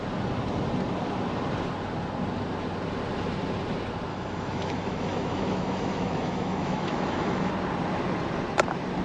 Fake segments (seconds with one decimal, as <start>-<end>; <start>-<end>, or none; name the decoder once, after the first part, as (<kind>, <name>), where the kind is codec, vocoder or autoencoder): 4.1-7.5 (autoencoder, DAC-VAE)